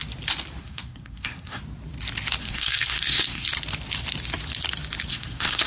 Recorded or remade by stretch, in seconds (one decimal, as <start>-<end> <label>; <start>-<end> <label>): 0.0-0.6 recorded; 0.6-1.6 remade; 1.6-2.4 recorded; 2.4-3.5 remade; 3.5-5.1 recorded; 5.1-5.7 remade